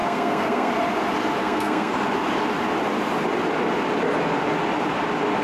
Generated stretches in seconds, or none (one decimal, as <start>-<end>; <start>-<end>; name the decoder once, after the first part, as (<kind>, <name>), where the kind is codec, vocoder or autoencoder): 0.0-0.7 (codec, SNAC); 1.4-1.9